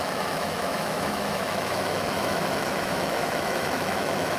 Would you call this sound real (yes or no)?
no